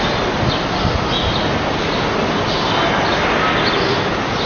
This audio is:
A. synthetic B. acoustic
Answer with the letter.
B